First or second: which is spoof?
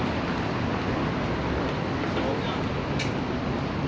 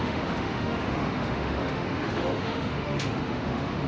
second